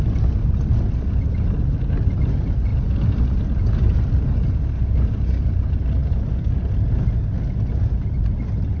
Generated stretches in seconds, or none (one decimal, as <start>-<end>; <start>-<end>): none

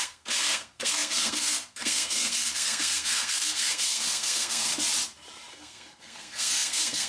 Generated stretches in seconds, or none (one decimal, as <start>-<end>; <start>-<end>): 0.0-4.7; 5.5-7.1

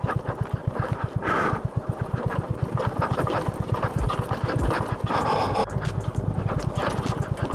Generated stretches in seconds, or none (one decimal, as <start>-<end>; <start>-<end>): 0.6-4.0

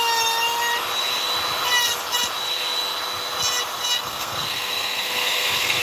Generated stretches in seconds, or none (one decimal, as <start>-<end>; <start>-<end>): 4.0-5.8

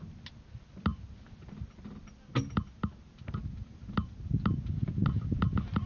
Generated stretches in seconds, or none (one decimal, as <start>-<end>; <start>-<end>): none